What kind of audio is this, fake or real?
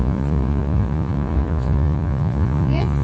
fake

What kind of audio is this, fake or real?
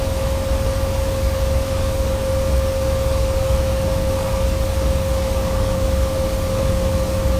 fake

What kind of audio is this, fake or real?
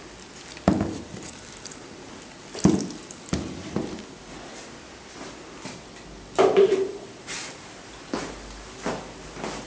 real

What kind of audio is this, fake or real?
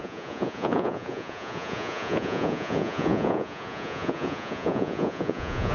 fake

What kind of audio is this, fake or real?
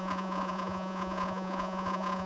fake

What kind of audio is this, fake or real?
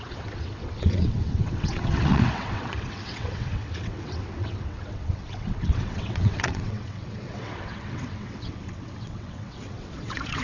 fake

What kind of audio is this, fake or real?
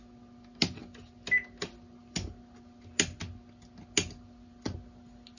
real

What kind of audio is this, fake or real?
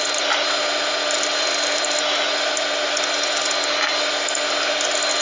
real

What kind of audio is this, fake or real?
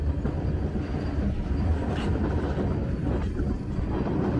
real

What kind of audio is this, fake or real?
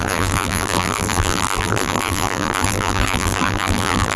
fake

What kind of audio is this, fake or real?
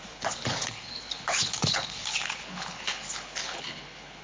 fake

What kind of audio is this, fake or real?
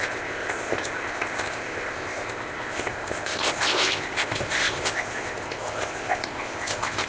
fake